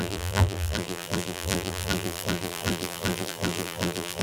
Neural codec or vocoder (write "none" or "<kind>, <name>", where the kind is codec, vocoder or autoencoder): vocoder, BigVGAN v2